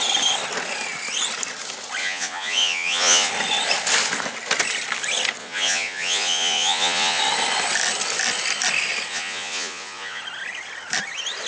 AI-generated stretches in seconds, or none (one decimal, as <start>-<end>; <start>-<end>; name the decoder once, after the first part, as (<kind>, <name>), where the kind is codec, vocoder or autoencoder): 2.0-3.3 (vocoder, Vocos); 5.4-7.2; 9.1-10.2